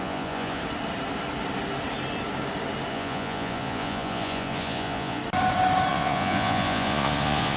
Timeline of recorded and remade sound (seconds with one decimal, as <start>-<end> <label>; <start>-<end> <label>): 0.0-0.6 remade; 0.6-2.9 recorded; 2.9-5.2 remade; 5.2-5.9 recorded; 5.9-7.6 remade